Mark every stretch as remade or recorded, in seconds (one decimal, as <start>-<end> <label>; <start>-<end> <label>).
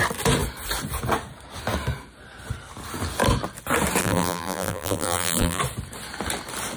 0.0-4.0 recorded; 4.0-5.6 remade; 5.6-6.8 recorded